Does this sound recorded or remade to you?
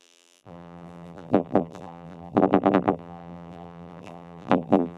remade